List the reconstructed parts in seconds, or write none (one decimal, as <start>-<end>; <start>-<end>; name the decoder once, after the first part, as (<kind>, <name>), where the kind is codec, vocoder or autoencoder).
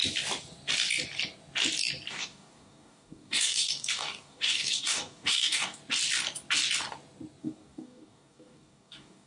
2.1-5.8 (codec, DAC); 7.4-9.3